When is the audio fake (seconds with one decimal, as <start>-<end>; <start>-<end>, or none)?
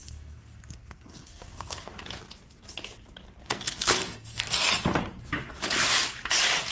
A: 0.0-1.9; 3.4-4.7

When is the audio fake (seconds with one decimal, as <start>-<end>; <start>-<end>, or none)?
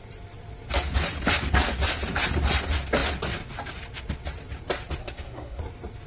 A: 5.0-5.6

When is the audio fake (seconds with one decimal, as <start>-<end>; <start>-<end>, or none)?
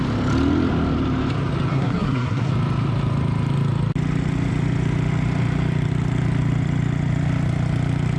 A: 1.7-2.5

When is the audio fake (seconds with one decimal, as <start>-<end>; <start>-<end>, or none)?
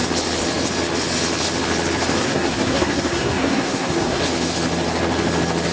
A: 2.2-4.2